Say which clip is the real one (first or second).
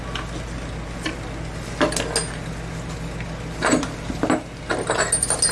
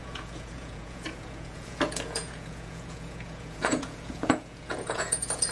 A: first